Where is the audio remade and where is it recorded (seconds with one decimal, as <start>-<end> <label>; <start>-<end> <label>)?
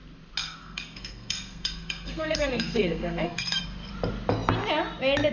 0.0-0.4 recorded; 0.4-3.6 remade; 3.6-5.3 recorded